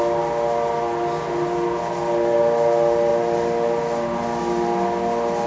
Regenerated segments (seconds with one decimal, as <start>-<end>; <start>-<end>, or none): none